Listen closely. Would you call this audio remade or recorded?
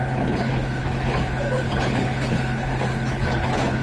remade